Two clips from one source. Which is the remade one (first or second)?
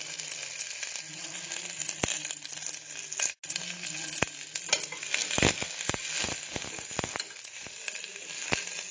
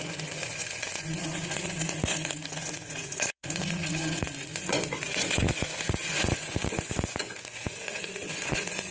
second